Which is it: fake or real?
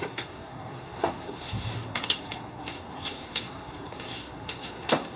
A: fake